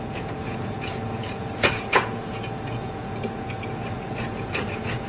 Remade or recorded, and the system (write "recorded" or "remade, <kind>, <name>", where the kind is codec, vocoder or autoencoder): remade, vocoder, Vocos